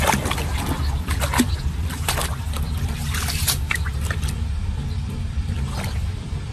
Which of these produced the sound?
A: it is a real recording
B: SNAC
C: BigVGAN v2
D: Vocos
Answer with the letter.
A